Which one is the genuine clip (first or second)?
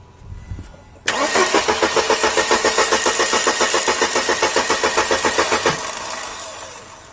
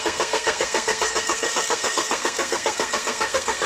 first